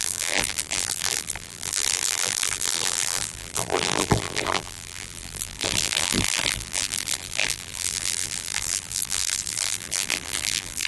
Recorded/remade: remade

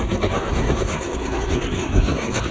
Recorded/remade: remade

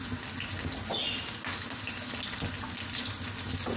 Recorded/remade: recorded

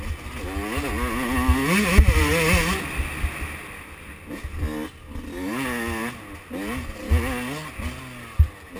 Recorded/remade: recorded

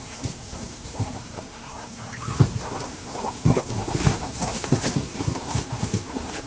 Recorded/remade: remade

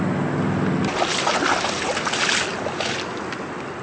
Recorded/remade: recorded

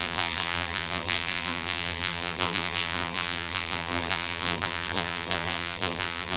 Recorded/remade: remade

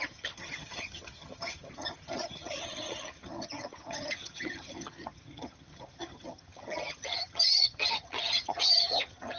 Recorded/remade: remade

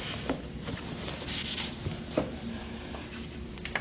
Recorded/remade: remade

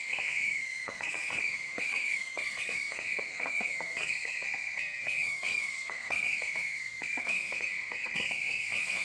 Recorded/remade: remade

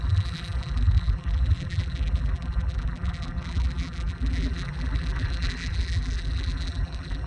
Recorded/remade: remade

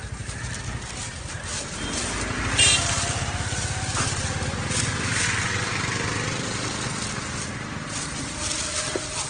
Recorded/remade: recorded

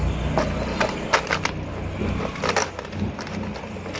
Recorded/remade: recorded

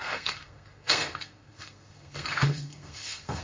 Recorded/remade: remade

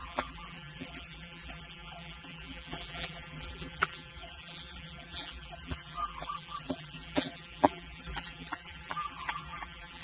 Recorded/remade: remade